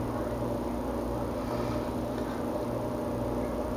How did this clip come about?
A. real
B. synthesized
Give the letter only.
A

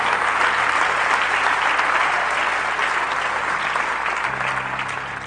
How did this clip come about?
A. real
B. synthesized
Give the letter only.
A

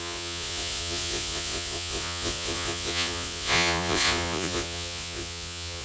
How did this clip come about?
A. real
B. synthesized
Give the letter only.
B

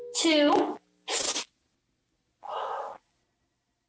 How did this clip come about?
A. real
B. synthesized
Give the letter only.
A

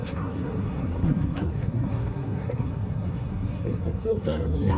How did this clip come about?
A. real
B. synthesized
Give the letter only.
B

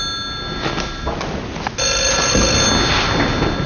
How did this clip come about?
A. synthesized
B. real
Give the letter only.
B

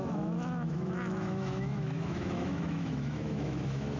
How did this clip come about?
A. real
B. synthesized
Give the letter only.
B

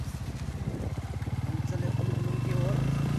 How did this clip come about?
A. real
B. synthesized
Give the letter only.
A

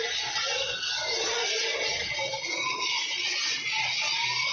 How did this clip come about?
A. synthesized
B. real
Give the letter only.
B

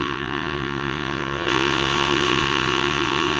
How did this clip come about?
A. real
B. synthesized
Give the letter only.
B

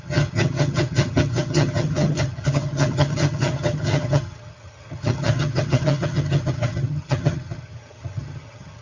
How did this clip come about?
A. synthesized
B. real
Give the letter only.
A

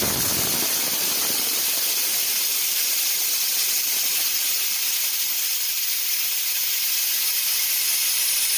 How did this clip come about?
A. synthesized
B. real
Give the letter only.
B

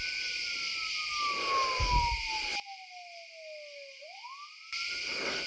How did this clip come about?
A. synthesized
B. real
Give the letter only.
B